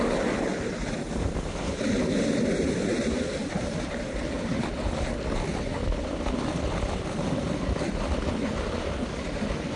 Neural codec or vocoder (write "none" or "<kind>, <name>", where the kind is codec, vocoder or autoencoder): none